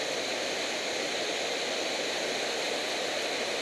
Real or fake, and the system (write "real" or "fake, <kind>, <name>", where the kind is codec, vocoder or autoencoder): real